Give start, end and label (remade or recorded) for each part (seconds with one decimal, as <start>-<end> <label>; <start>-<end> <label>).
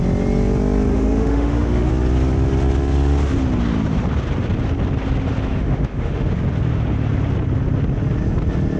0.0-0.9 recorded; 0.9-1.9 remade; 1.9-5.5 recorded; 5.5-6.3 remade; 6.3-8.8 recorded